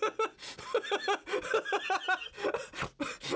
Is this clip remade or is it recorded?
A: recorded